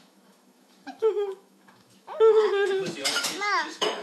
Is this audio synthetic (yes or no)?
yes